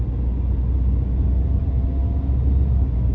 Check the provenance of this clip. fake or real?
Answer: real